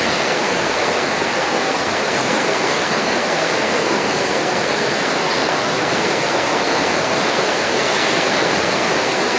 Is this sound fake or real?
fake